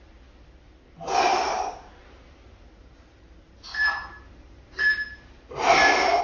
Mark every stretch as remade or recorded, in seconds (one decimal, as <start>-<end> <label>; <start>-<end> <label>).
0.0-1.3 recorded; 1.3-3.2 remade; 3.2-3.7 recorded; 3.7-6.2 remade